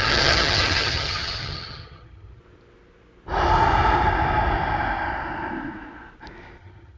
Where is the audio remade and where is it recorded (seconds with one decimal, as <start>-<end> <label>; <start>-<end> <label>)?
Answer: 0.0-2.4 remade; 2.4-6.6 recorded; 6.6-7.0 remade